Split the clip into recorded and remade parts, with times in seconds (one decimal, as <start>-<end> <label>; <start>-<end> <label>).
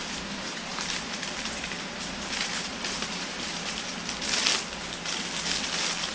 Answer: 0.0-3.9 remade; 3.9-6.1 recorded